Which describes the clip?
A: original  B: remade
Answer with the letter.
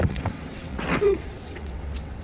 B